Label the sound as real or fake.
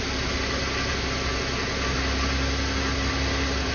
real